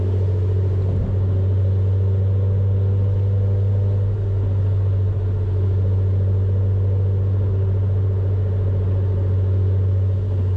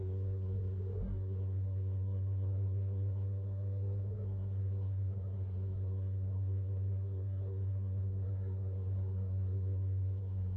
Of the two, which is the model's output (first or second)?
second